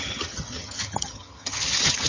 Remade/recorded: remade